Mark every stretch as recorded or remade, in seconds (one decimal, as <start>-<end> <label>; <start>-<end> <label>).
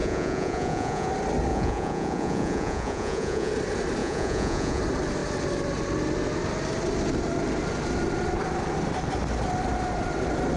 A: 0.0-1.1 remade; 1.1-1.5 recorded; 1.5-3.5 remade; 3.5-4.0 recorded; 4.0-4.8 remade; 4.8-10.6 recorded